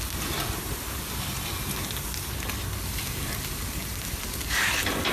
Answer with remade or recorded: recorded